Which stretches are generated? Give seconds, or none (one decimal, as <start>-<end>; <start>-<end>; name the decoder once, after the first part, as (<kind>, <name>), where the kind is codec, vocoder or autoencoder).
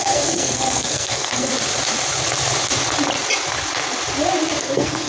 0.0-1.5 (codec, SNAC); 4.6-5.1